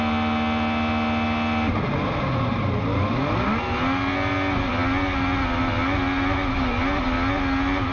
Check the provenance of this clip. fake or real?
real